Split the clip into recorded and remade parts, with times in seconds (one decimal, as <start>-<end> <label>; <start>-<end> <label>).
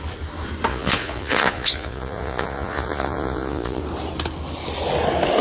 0.0-0.7 recorded; 0.7-3.8 remade; 3.8-5.4 recorded